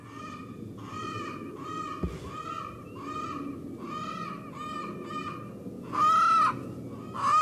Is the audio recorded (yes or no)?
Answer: yes